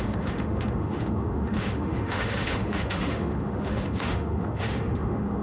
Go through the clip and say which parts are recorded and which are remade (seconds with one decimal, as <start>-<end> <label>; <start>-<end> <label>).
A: 0.0-5.4 remade